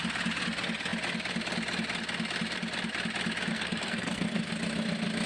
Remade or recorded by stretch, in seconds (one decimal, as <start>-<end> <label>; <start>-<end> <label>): 0.0-3.5 recorded; 3.5-4.5 remade; 4.5-5.3 recorded